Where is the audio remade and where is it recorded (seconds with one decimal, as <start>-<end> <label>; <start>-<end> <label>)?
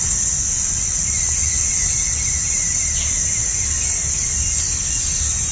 0.0-5.5 recorded